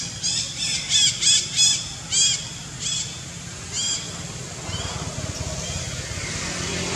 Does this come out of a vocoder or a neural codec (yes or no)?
no